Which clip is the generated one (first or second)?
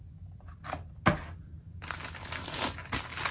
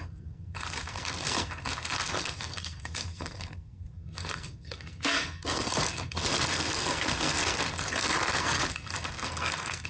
second